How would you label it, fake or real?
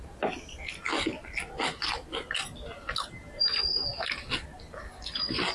real